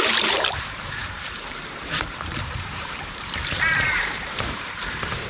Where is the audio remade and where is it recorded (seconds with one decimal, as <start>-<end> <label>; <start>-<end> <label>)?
0.0-5.3 remade